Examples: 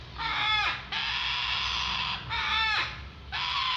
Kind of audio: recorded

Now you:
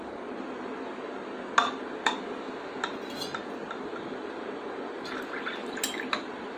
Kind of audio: recorded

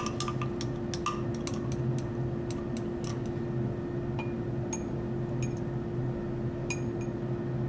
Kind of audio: recorded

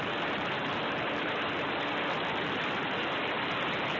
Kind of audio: recorded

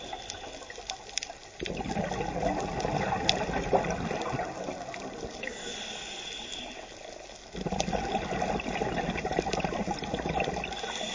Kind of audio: recorded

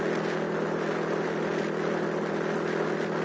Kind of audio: recorded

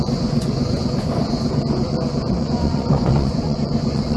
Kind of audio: remade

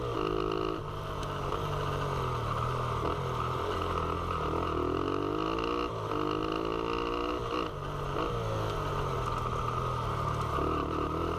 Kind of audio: recorded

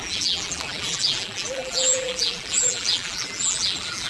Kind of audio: remade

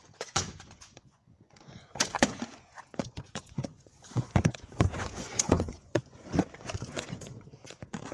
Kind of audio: remade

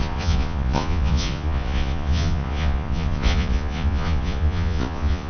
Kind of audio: remade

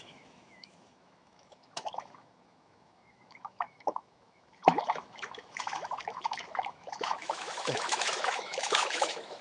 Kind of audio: remade